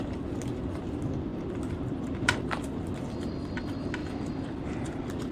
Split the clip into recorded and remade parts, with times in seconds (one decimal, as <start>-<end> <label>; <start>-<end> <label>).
0.0-5.3 recorded